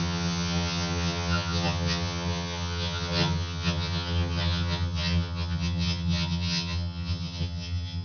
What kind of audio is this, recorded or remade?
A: remade